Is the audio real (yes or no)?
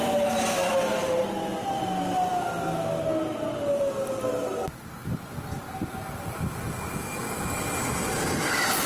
yes